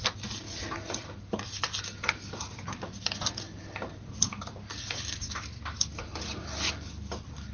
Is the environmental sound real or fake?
real